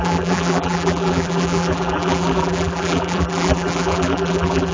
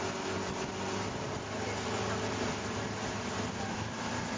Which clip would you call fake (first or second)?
first